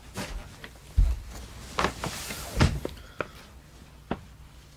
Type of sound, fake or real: real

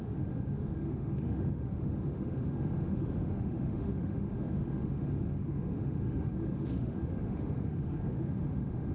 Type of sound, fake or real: fake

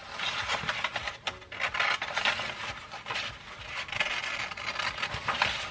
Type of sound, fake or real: real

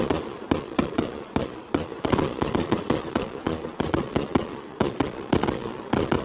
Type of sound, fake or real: fake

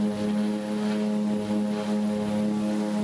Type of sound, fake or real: real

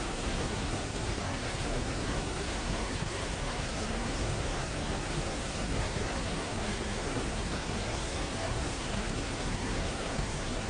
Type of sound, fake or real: fake